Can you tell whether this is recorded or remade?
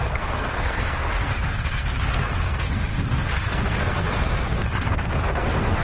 remade